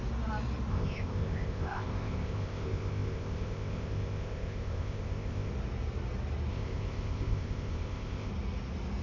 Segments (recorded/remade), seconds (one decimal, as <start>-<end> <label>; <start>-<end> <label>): 0.0-0.7 recorded; 0.7-5.5 remade; 5.5-6.5 recorded; 6.5-8.3 remade; 8.3-9.0 recorded